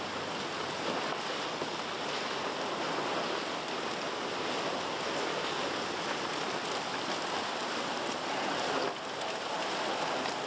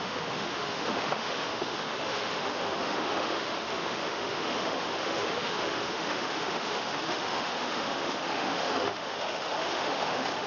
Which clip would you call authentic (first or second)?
first